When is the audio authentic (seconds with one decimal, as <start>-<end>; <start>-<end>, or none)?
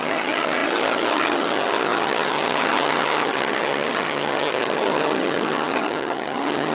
none